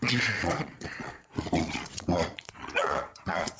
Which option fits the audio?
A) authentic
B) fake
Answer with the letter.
B